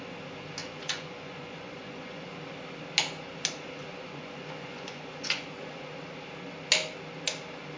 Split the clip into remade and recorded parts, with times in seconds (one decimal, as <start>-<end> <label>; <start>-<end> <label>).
0.0-0.6 recorded; 0.6-2.2 remade; 2.2-3.8 recorded; 3.8-5.9 remade; 5.9-7.8 recorded